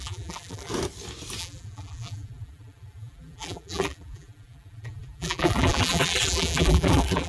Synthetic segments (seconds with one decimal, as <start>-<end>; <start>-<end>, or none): 0.0-0.7; 1.4-7.3